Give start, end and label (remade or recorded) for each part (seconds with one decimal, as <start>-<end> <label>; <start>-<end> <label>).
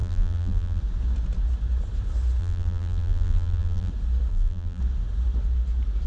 0.0-0.8 remade; 0.8-2.4 recorded; 2.4-3.9 remade; 3.9-4.3 recorded; 4.3-4.8 remade; 4.8-6.1 recorded